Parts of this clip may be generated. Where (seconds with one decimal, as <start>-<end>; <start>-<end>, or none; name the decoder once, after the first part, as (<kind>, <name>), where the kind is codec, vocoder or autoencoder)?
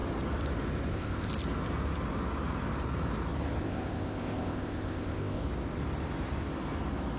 0.9-1.3 (codec, ZipCodec); 3.6-5.4